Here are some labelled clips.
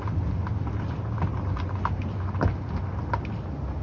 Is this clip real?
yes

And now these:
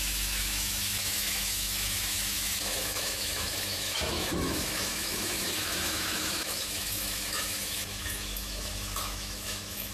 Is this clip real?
no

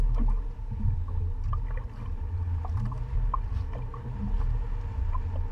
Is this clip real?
yes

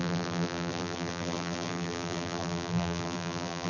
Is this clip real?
no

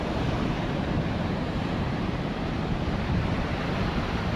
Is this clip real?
no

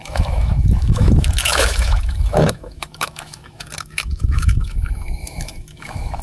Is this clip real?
no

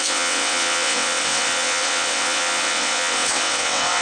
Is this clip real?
no